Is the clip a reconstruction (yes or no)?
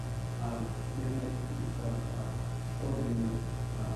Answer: no